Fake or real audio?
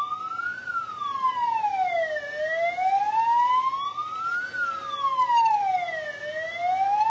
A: real